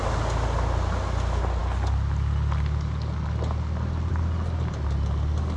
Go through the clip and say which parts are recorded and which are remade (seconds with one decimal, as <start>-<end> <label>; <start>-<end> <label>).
0.0-5.6 recorded